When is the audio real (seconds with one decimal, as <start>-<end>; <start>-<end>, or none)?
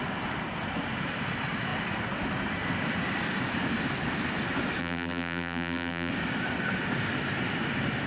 0.0-4.8; 6.1-8.1